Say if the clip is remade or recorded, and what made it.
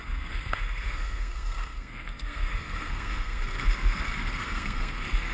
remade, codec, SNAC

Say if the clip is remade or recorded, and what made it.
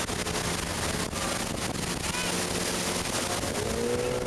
recorded